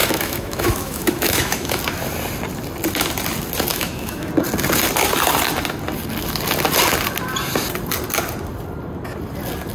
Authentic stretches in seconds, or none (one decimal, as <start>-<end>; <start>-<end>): 1.8-3.7; 4.3-9.7